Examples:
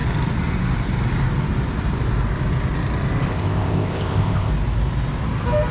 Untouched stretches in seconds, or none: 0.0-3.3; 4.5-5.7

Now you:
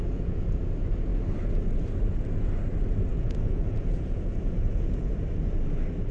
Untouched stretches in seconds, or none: 0.6-3.1; 5.1-6.1

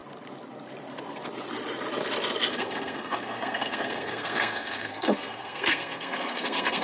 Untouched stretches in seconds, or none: 0.0-2.5

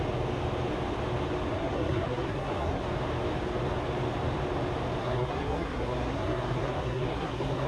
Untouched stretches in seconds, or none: 0.0-1.5; 2.8-5.0

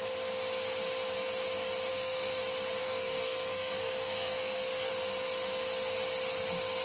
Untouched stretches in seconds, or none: 0.0-1.9; 2.4-2.8; 4.9-6.8

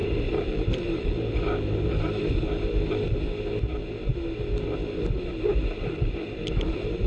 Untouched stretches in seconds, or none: 1.3-7.1

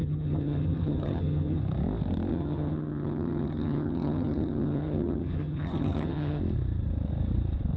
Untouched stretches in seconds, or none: 1.6-2.3; 6.4-7.8